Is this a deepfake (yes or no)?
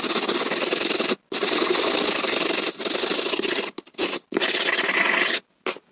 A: no